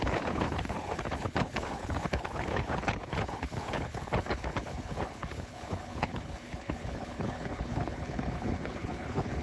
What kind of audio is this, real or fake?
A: fake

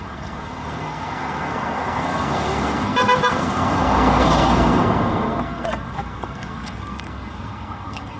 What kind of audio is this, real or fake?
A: fake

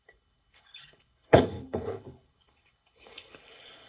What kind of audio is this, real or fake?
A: fake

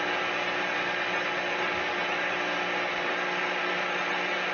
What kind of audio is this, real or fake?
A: real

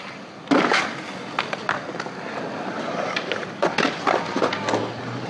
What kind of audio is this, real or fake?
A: real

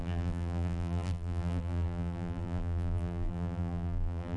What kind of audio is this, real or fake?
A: fake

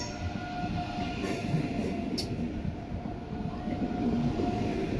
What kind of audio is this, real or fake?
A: real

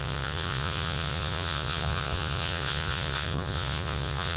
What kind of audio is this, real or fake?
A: fake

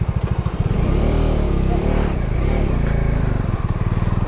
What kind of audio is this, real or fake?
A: fake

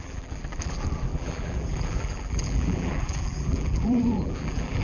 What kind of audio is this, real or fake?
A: fake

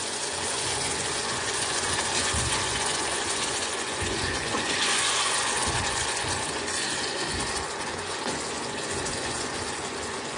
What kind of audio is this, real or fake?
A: fake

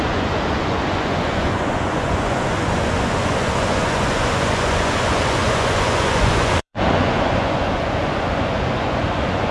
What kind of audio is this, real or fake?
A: fake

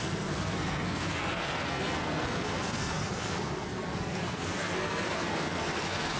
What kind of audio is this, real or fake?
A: fake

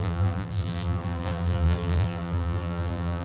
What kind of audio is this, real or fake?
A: fake